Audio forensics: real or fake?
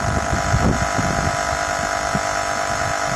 real